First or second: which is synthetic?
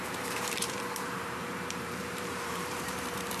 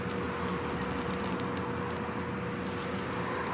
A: first